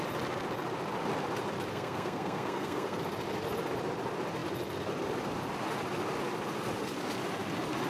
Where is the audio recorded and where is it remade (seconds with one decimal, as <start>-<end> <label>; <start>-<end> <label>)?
0.0-1.7 recorded; 1.7-3.0 remade; 3.0-7.9 recorded